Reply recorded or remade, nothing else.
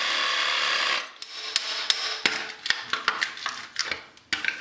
recorded